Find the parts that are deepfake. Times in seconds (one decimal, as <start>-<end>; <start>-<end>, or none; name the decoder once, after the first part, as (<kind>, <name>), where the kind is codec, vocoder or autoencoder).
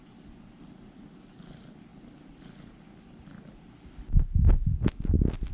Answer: none